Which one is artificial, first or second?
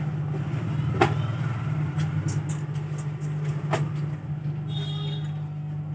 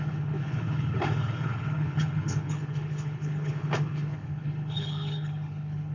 second